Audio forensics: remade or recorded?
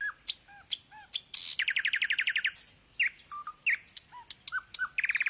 recorded